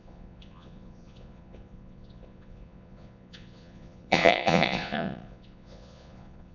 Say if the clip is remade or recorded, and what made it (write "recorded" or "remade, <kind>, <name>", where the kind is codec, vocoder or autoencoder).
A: remade, vocoder, Vocos